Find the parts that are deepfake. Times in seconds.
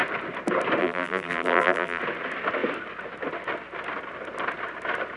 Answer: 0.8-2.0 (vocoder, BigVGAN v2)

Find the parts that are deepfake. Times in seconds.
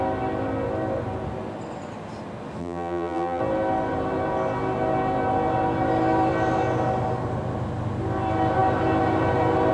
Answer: 2.6-3.4 (vocoder, BigVGAN v2)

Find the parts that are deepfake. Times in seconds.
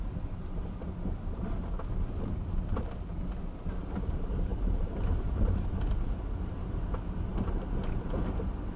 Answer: 4.5-5.7 (vocoder, BigVGAN v2); 7.3-7.8